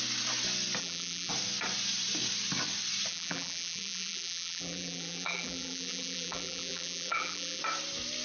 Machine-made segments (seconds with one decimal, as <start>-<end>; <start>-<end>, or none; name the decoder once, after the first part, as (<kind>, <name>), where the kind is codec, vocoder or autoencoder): 0.8-1.3 (vocoder, BigVGAN v2); 3.1-7.6